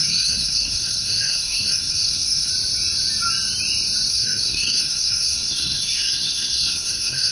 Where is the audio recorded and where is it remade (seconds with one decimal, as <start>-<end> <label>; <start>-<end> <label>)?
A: 0.0-2.5 remade; 2.5-4.1 recorded; 4.1-7.3 remade